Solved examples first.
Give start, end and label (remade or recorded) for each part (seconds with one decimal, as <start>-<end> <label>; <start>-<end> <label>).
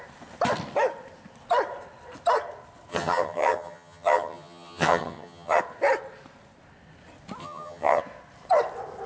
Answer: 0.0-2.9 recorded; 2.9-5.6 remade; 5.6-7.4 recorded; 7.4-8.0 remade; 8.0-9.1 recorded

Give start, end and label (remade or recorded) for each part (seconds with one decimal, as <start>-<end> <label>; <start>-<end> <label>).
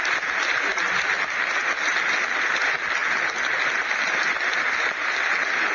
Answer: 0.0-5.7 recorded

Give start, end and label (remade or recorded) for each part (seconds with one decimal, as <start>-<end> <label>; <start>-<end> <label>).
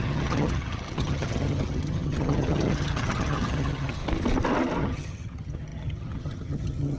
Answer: 0.0-4.0 remade; 4.0-4.8 recorded; 4.8-7.0 remade